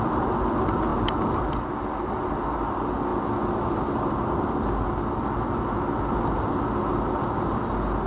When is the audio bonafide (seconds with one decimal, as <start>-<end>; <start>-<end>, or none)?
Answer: 0.0-0.9; 2.4-8.1